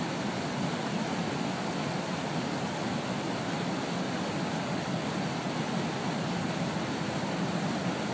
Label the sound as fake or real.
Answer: real